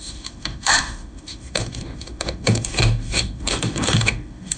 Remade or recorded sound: remade